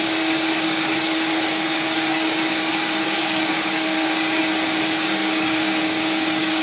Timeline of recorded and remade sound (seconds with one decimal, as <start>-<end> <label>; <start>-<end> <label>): 0.0-4.4 remade; 4.4-5.0 recorded; 5.0-6.6 remade